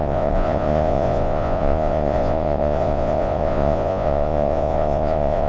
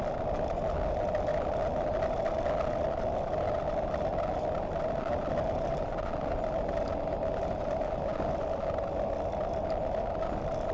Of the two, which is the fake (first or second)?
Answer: first